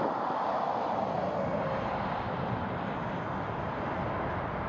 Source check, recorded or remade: recorded